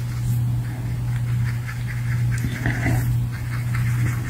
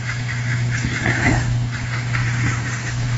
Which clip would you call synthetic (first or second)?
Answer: second